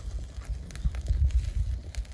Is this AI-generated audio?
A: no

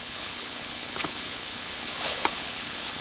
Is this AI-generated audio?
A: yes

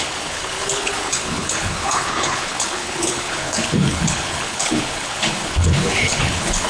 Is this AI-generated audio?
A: yes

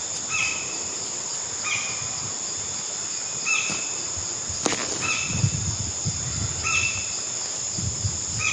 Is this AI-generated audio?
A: no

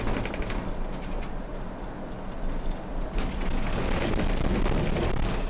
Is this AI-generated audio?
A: no